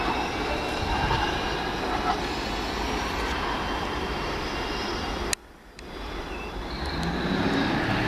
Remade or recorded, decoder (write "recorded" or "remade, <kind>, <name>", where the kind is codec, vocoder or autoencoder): recorded